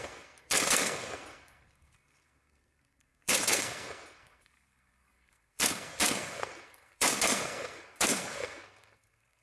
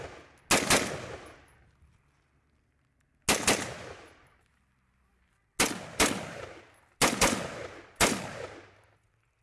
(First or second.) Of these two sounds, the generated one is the first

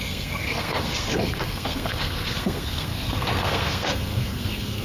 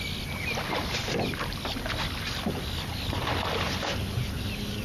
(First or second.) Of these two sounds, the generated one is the first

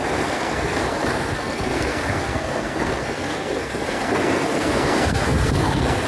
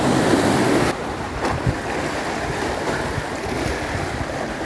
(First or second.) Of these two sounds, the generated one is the first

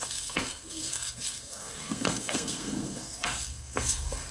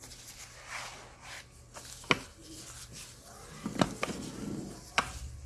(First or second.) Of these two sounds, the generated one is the first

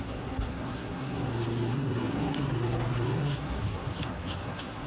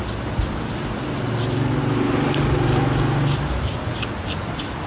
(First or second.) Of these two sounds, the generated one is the first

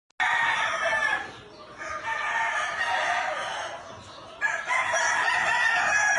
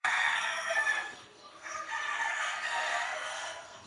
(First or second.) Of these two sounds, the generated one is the second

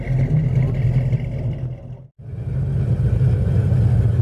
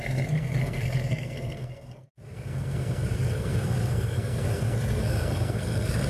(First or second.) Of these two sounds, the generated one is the second